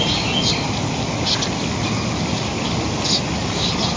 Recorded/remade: recorded